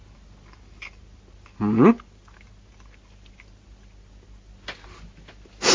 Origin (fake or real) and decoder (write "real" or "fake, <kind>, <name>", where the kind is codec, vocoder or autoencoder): real